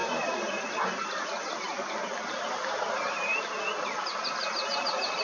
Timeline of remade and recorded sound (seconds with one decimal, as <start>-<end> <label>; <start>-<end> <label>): 0.0-5.2 recorded